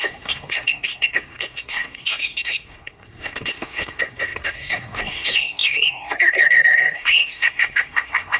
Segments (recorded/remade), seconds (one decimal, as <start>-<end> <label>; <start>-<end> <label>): 0.0-8.4 remade